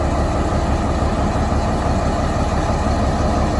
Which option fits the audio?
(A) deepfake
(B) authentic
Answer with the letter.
B